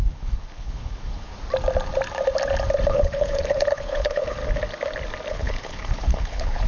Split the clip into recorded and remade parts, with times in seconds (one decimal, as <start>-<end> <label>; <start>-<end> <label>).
0.0-1.3 remade; 1.3-2.9 recorded; 2.9-4.4 remade; 4.4-5.3 recorded; 5.3-6.7 remade